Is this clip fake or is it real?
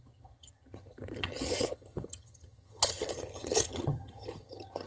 fake